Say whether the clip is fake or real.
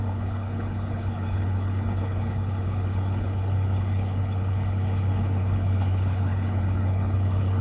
fake